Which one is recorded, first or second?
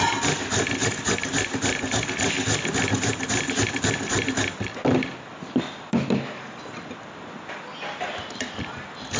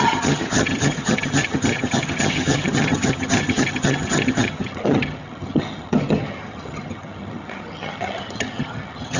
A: first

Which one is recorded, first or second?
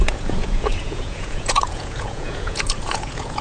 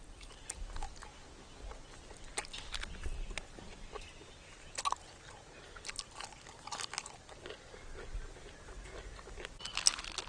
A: second